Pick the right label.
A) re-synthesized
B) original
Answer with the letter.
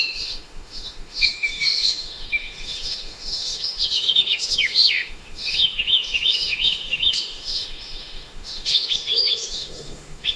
A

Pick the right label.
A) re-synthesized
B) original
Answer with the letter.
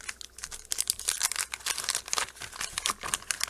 B